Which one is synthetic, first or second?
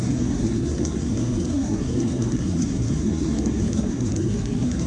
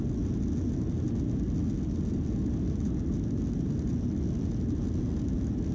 first